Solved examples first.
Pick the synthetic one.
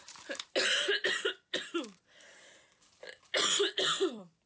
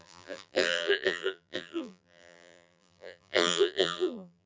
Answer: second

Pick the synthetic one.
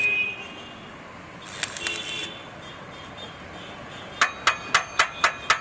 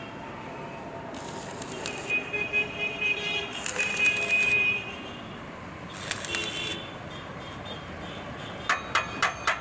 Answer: second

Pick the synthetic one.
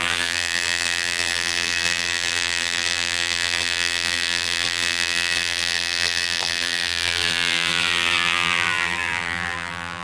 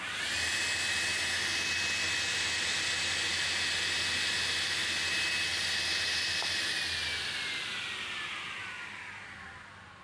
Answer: first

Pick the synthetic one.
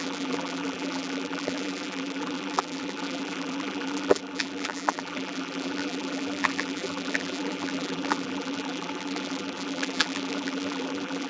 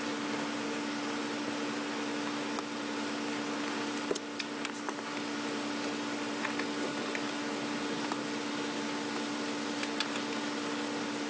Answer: first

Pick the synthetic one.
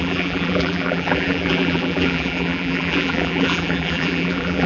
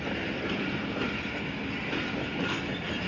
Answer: first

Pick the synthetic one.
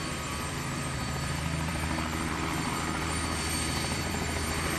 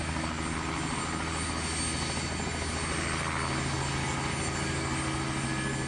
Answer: first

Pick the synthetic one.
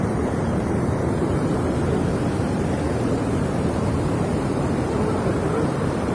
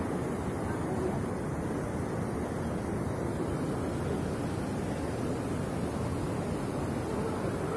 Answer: first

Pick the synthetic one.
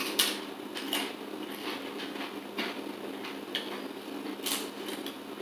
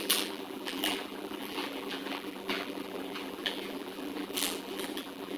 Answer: second